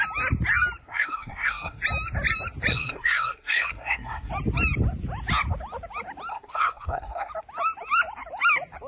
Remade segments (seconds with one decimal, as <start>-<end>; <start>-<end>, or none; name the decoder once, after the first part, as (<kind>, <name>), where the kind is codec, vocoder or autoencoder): 0.8-1.8 (codec, SNAC); 2.7-4.3; 6.3-7.3